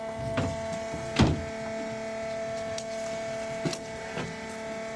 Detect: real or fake real